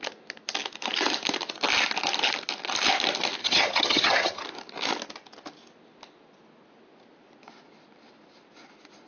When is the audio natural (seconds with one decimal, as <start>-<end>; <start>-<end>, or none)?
0.0-3.4; 4.4-9.1